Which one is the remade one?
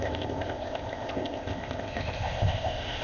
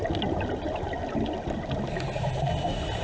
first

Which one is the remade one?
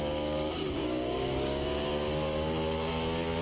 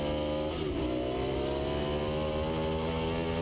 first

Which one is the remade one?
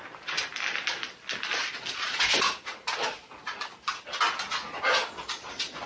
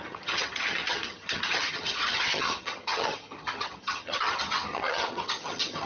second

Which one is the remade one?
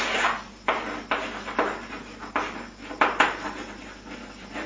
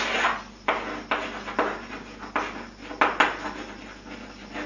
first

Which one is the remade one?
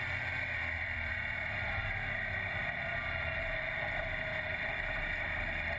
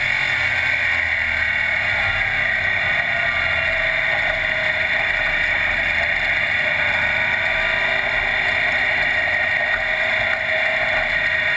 first